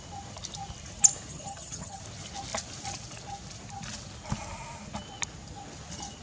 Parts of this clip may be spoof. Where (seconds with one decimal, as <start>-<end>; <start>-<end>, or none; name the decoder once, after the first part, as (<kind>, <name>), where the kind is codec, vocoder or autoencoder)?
1.3-2.0 (vocoder, HiFi-GAN)